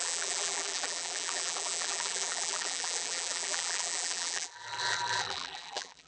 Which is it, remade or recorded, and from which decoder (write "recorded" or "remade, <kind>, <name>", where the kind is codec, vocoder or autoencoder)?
remade, vocoder, BigVGAN v2